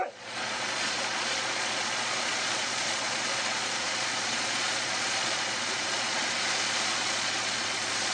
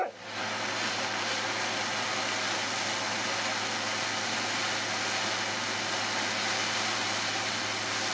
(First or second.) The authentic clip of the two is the second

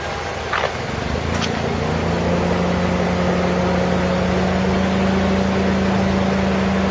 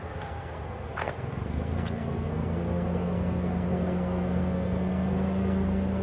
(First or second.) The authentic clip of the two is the first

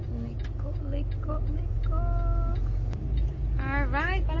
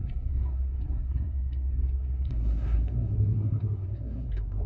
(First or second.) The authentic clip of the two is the first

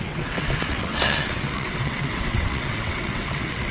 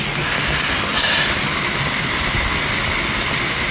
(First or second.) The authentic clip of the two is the second